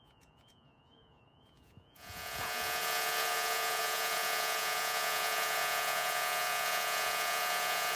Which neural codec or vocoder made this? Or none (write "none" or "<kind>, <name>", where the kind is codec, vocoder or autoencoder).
vocoder, Vocos